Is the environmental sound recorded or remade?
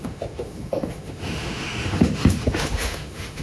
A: remade